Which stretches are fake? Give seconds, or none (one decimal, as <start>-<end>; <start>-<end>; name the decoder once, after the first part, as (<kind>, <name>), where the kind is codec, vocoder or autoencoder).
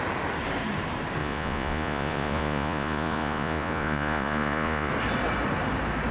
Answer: 1.2-4.9 (vocoder, Vocos)